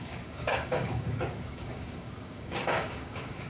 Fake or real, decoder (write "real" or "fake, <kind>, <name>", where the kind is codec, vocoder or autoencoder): fake, codec, DAC